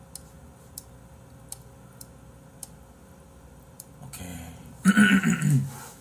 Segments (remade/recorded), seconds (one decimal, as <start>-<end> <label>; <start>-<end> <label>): 0.0-4.3 recorded; 4.3-4.9 remade; 4.9-6.0 recorded

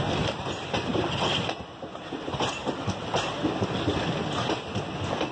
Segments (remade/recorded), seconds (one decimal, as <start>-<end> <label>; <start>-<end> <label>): 0.0-5.3 recorded

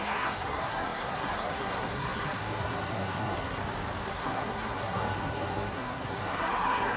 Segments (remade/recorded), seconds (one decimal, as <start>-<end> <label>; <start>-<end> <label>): 0.0-3.6 remade; 3.6-4.1 recorded; 4.1-7.0 remade

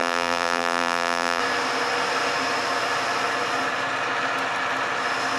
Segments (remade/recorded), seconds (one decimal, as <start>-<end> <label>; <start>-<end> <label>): 0.0-1.4 remade; 1.4-5.4 recorded

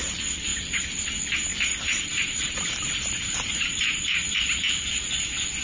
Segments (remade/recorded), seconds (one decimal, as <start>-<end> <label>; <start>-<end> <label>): 0.0-0.5 recorded; 0.5-1.1 remade; 1.1-1.5 recorded; 1.5-4.9 remade; 4.9-5.6 recorded